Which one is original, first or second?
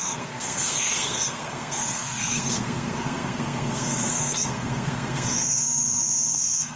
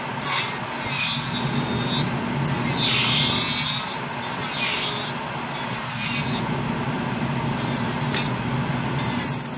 second